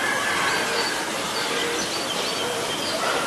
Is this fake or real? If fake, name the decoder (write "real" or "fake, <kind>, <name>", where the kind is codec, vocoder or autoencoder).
real